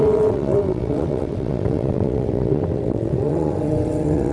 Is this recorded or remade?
remade